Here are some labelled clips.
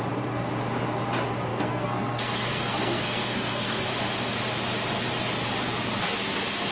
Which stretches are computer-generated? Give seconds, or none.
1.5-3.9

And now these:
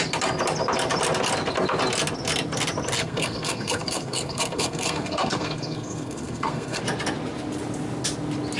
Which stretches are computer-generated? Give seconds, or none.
3.0-6.8

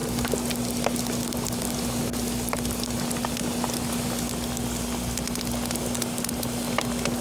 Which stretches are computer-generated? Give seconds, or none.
none

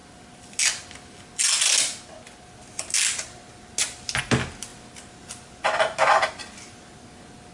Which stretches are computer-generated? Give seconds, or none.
none